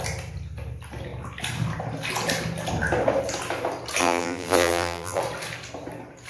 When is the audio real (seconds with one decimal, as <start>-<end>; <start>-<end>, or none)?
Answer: 0.0-4.0; 5.2-6.3